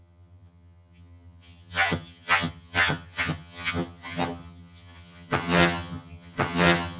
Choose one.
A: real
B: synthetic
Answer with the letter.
B